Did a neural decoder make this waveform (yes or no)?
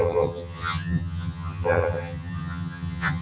yes